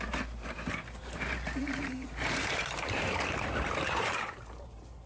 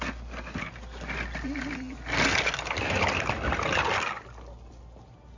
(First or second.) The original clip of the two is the second